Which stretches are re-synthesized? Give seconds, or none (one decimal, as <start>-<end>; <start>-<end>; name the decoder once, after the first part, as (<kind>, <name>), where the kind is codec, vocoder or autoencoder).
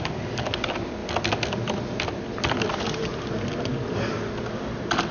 none